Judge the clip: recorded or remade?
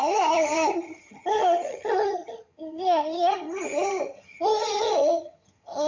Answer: remade